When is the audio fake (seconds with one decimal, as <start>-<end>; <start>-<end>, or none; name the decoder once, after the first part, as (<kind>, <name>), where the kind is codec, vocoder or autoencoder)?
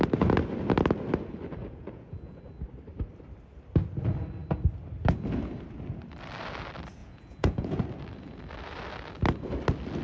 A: 1.6-2.4 (vocoder, Vocos); 7.0-7.8